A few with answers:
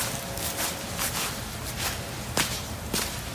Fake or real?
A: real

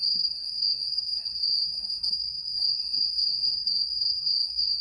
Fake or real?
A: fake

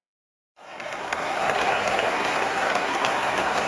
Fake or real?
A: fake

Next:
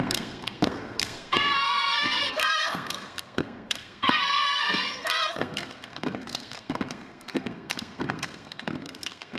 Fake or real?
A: fake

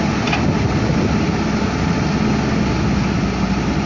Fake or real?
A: real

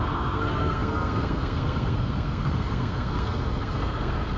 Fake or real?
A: fake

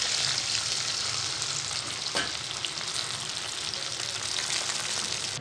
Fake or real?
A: real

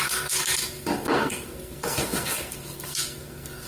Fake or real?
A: fake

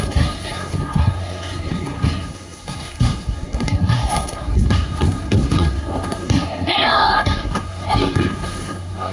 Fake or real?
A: fake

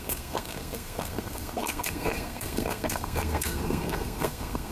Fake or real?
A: fake